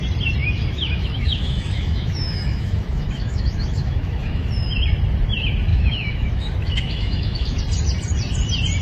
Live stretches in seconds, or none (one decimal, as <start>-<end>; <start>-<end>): 0.0-0.4; 4.5-5.7; 7.6-8.8